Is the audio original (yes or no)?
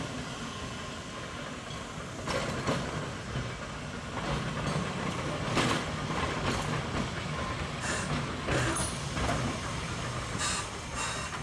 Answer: yes